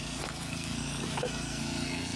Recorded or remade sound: remade